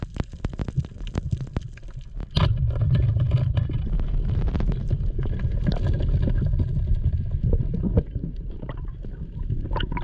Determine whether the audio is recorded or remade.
recorded